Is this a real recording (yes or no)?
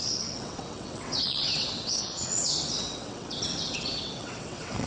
no